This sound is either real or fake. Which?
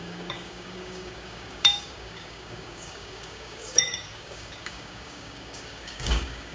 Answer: fake